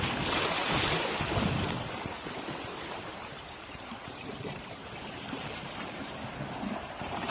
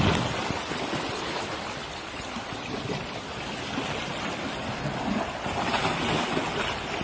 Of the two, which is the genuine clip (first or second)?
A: second